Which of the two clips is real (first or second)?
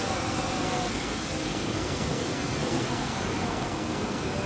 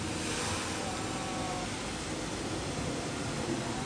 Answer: second